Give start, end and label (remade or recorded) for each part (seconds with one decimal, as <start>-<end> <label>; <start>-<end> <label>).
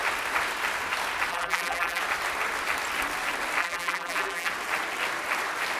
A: 0.0-1.3 recorded; 1.3-2.0 remade; 2.0-3.6 recorded; 3.6-4.5 remade; 4.5-5.8 recorded